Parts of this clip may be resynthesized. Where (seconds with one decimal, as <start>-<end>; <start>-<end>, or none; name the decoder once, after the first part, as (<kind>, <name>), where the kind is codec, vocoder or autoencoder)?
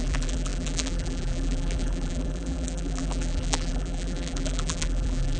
0.0-5.4 (vocoder, BigVGAN v2)